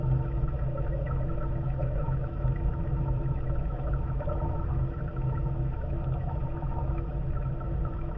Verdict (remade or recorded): remade